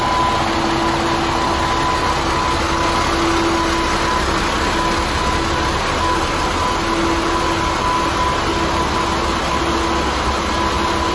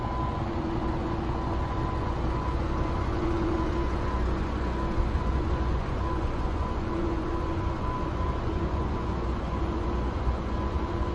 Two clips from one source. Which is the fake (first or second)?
second